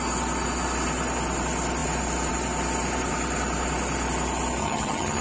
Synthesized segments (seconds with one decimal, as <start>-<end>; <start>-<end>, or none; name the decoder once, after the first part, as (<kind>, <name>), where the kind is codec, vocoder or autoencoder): 4.6-5.2 (vocoder, HiFi-GAN)